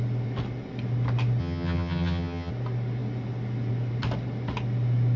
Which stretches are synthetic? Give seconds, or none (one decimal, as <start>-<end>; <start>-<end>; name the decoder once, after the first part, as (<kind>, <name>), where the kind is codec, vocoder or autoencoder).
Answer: 1.4-2.5 (vocoder, HiFi-GAN)

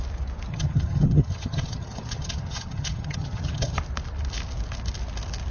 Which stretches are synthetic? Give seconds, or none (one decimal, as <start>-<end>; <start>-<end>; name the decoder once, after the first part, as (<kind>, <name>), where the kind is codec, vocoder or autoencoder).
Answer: 0.5-3.8 (vocoder, HiFi-GAN)

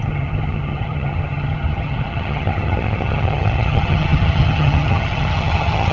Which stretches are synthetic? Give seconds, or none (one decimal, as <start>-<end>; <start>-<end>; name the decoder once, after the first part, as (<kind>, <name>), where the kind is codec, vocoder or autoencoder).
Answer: 0.0-5.9 (vocoder, HiFi-GAN)

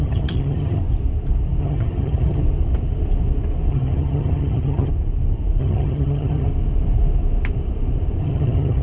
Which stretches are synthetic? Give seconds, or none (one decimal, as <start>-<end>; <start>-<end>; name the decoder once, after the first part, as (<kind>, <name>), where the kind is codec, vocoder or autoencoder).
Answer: 0.0-0.8 (vocoder, HiFi-GAN); 1.6-2.4; 3.7-4.9; 5.6-6.5; 8.2-8.8

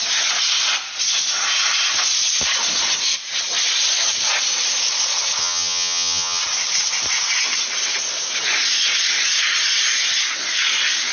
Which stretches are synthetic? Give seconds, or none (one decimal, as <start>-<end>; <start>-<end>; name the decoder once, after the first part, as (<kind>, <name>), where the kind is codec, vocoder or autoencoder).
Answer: 5.4-6.4 (vocoder, HiFi-GAN)